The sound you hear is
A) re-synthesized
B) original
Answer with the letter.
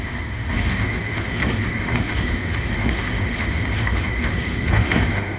A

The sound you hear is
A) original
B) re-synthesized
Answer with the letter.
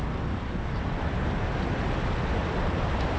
B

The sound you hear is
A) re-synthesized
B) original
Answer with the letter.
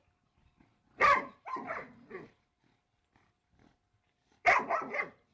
A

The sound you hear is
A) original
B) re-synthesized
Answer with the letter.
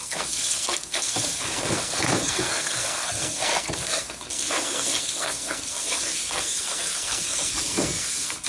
B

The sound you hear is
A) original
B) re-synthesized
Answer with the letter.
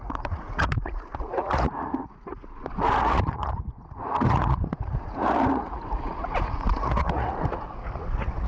B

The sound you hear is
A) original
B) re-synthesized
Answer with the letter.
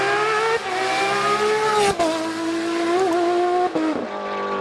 A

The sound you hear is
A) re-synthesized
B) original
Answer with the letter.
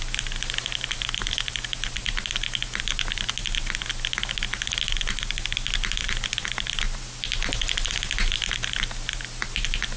B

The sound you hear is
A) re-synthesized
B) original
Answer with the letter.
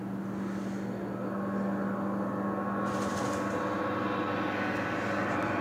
B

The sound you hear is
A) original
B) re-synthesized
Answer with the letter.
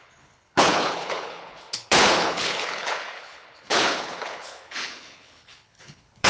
B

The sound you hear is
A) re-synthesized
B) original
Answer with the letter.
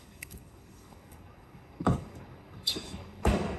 A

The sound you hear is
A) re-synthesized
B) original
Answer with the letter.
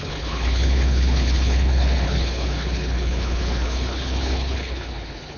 A